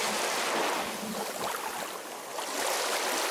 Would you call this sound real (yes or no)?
yes